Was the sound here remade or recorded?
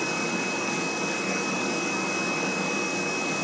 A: remade